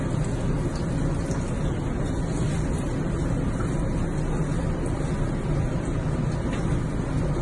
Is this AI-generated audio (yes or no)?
no